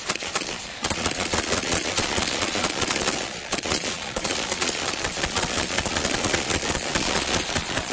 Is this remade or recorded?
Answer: remade